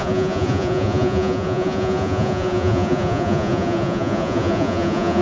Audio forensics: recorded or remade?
remade